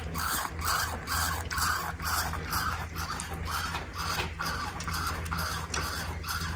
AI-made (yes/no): no